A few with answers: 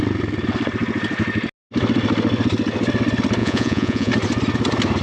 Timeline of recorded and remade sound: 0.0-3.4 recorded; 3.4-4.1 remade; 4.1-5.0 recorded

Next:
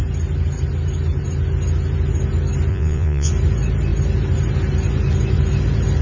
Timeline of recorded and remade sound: 0.0-2.7 recorded; 2.7-3.3 remade; 3.3-6.0 recorded

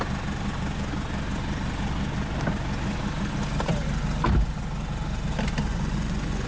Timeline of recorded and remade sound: 0.0-5.7 recorded; 5.7-6.5 remade

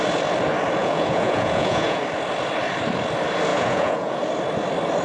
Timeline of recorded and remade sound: 0.0-0.8 recorded; 0.8-2.0 remade; 2.0-3.5 recorded; 3.5-4.2 remade; 4.2-5.0 recorded

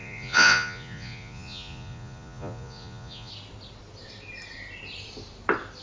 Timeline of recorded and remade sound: 0.0-3.3 remade; 3.3-5.8 recorded

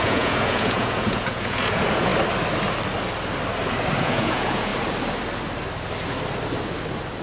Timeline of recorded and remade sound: 0.0-2.1 remade; 2.1-4.0 recorded; 4.0-4.7 remade; 4.7-7.2 recorded

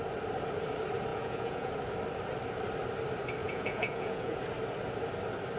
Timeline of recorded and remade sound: 0.0-1.1 recorded; 1.1-1.7 remade; 1.7-3.4 recorded; 3.4-4.4 remade; 4.4-5.6 recorded

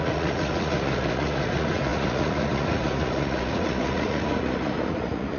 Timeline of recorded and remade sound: 0.0-5.4 remade